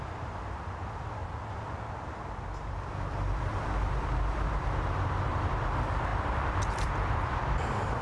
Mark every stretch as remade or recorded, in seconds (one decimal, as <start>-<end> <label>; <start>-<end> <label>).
0.0-1.2 remade; 1.2-2.6 recorded; 2.6-8.0 remade